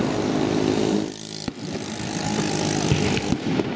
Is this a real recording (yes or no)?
no